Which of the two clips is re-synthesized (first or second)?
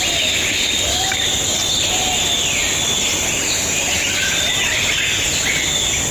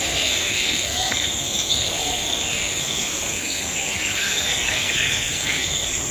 second